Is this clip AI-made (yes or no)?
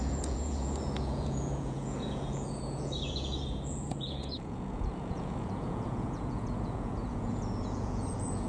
yes